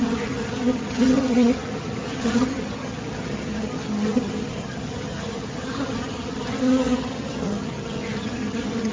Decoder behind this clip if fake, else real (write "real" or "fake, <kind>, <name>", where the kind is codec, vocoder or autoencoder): fake, vocoder, HiFi-GAN